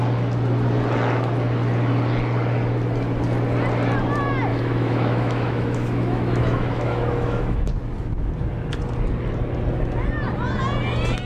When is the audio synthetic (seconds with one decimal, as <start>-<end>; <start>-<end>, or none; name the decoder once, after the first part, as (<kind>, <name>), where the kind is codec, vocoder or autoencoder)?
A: 4.5-7.7 (autoencoder, DAC-VAE)